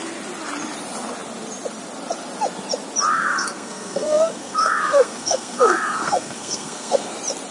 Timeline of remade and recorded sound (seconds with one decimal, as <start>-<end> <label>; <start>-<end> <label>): 0.0-3.1 recorded; 3.1-7.1 remade; 7.1-7.5 recorded